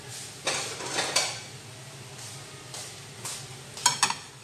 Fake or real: real